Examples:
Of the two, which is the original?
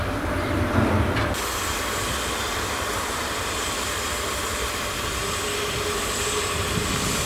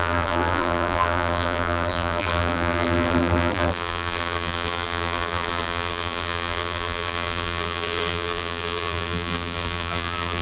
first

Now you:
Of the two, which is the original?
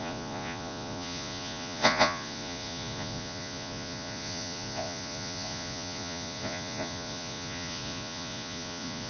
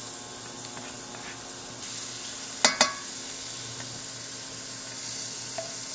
second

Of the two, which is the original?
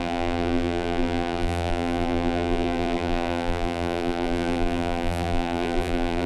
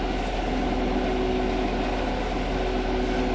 second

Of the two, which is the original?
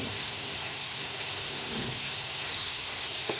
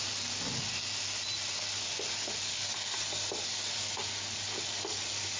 second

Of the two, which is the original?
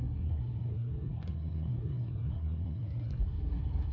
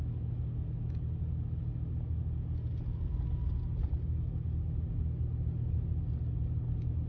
second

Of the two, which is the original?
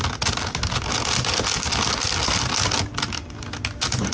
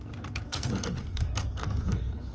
first